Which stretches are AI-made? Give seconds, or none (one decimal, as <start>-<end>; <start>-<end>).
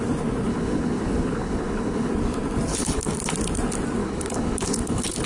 0.5-2.1; 2.7-3.2; 4.0-5.3